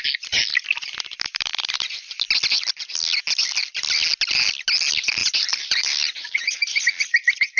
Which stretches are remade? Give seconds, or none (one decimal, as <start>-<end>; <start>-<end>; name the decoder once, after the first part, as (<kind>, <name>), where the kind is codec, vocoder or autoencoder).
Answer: 5.2-6.8 (vocoder, BigVGAN v2)